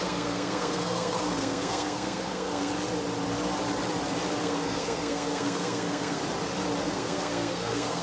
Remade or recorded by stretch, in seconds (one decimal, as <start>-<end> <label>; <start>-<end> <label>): 0.0-2.7 remade; 2.7-4.4 recorded; 4.4-6.2 remade; 6.2-6.8 recorded; 6.8-8.0 remade